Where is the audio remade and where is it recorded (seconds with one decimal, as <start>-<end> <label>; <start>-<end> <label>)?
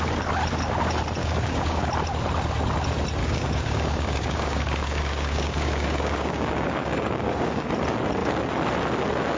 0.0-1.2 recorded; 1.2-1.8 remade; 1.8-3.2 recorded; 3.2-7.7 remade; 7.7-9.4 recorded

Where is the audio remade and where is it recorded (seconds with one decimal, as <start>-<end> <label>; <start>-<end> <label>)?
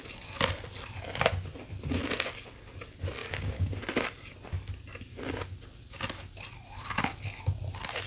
0.0-3.2 recorded; 3.2-3.8 remade; 3.8-8.1 recorded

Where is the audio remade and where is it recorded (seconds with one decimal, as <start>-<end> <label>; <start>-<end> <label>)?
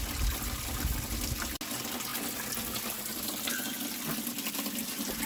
0.0-5.3 recorded